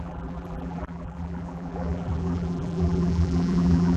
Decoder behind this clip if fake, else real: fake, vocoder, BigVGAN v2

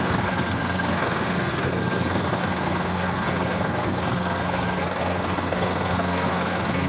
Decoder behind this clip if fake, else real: fake, codec, SNAC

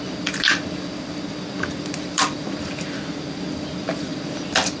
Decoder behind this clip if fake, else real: real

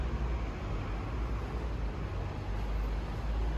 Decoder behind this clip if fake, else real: real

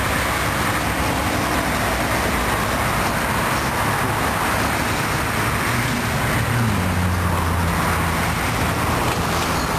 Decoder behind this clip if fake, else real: real